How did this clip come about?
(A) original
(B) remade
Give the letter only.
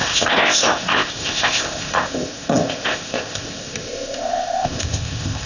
B